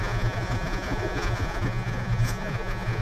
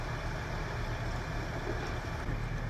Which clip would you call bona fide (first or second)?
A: second